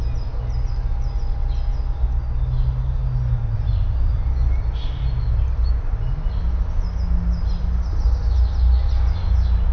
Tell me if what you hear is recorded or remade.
recorded